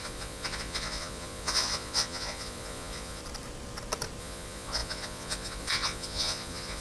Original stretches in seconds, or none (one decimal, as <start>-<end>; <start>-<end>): 3.2-4.2